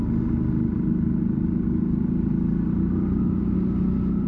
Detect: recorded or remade recorded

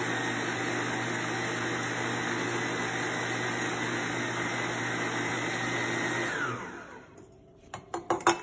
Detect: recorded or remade recorded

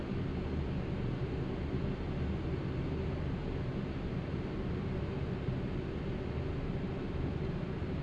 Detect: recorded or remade recorded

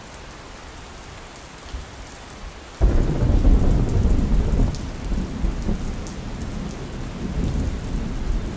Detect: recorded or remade recorded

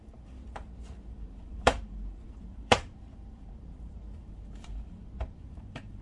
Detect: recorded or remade remade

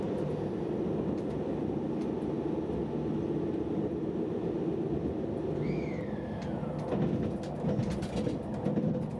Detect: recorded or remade recorded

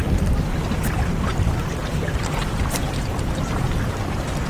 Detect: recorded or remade recorded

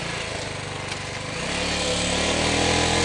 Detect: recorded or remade recorded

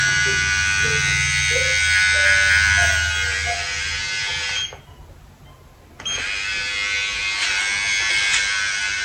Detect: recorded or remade recorded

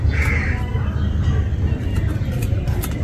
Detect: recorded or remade recorded